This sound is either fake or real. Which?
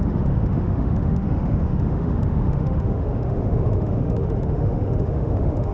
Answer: fake